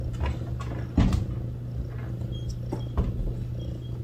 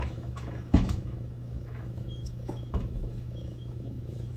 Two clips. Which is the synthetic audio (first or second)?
second